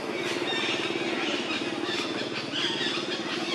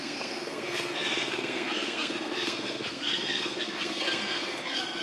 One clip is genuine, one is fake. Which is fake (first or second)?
second